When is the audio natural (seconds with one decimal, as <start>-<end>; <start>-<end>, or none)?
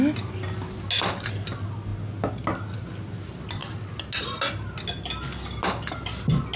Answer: 0.0-6.6